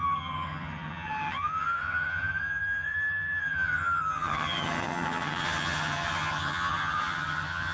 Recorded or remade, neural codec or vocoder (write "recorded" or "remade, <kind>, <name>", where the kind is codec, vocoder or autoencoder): remade, vocoder, HiFi-GAN